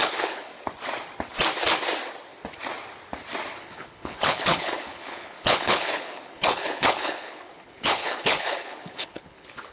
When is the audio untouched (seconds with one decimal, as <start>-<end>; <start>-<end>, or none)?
0.5-3.6

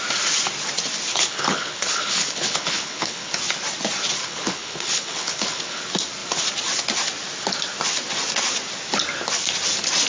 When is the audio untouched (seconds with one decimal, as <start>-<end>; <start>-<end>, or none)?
0.0-1.1; 3.3-4.2; 5.8-10.1

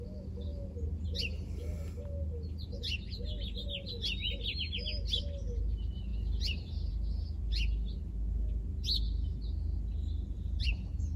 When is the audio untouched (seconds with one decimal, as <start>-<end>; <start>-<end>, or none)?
0.0-11.2